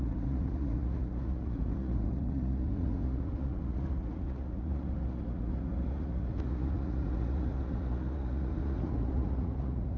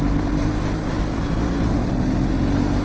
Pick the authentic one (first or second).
second